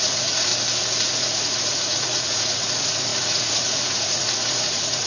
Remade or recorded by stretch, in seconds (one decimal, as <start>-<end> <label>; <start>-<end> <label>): 0.0-0.5 remade; 0.5-1.0 recorded; 1.0-5.1 remade

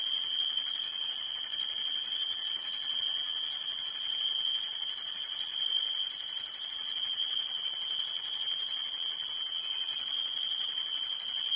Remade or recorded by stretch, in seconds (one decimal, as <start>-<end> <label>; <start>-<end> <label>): 0.0-5.5 remade; 5.5-6.6 recorded; 6.6-11.6 remade

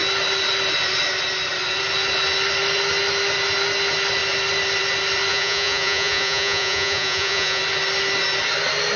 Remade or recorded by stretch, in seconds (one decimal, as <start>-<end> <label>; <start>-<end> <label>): 0.0-5.3 recorded; 5.3-7.6 remade; 7.6-9.0 recorded

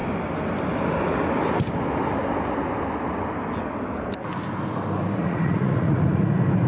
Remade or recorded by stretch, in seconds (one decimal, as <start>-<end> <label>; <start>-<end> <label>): 0.0-5.2 recorded; 5.2-6.2 remade; 6.2-6.7 recorded

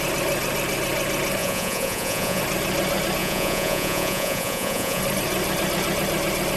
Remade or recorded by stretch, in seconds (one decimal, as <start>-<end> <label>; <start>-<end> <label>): 0.0-1.4 recorded; 1.4-2.4 remade; 2.4-3.2 recorded; 3.2-5.0 remade; 5.0-6.6 recorded

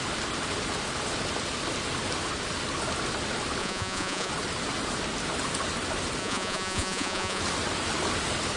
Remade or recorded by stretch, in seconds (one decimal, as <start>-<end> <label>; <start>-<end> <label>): 0.0-3.6 recorded; 3.6-4.3 remade; 4.3-6.2 recorded; 6.2-7.4 remade; 7.4-8.6 recorded

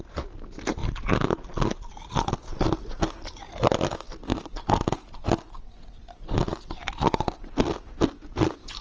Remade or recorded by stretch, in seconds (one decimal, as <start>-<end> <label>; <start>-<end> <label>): 0.0-8.8 recorded